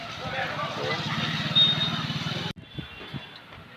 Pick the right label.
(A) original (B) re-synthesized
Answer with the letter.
A